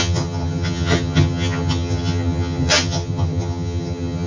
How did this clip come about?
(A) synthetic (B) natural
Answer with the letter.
A